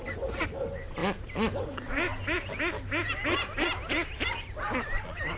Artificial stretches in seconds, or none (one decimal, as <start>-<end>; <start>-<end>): none